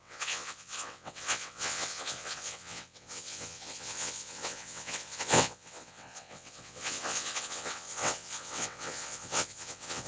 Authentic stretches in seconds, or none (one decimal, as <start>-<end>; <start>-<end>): none